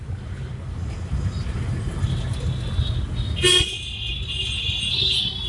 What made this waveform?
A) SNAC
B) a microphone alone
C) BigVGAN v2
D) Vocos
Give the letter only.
B